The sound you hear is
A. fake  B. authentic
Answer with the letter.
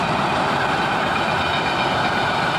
B